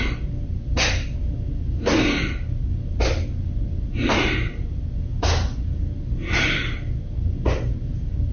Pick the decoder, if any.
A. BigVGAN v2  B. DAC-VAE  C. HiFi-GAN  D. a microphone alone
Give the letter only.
D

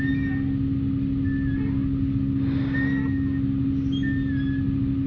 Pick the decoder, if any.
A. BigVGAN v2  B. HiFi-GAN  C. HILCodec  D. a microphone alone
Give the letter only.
D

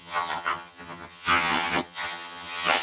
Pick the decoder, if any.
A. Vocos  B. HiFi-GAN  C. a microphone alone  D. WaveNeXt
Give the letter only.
B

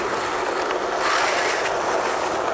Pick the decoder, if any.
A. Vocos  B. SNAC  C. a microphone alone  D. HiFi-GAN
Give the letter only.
C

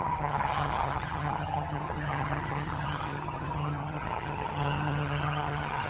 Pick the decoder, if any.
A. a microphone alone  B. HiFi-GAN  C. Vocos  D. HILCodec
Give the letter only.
B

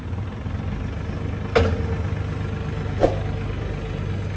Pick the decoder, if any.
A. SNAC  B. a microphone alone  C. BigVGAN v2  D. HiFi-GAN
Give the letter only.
B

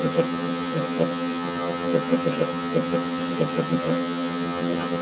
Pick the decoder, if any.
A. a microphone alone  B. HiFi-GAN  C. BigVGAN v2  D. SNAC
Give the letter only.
B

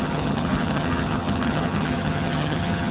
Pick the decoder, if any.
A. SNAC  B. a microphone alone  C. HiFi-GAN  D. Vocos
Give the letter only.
C